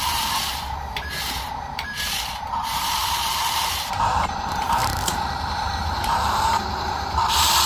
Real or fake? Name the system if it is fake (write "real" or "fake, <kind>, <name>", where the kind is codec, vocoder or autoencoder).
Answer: fake, vocoder, BigVGAN v2